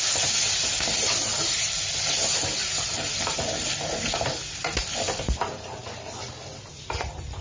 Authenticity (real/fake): real